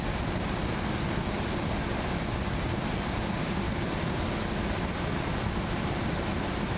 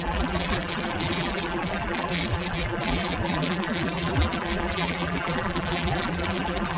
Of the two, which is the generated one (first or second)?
second